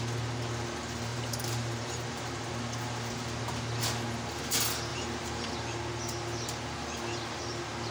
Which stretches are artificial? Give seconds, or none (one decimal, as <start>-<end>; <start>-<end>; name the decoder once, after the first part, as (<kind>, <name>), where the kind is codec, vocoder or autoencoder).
1.1-2.5 (vocoder, BigVGAN v2); 4.9-5.5